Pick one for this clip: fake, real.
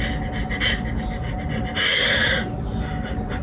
real